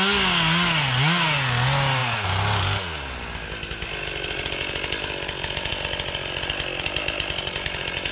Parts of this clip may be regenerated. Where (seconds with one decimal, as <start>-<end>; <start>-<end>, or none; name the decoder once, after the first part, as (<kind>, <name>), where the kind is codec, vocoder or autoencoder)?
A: none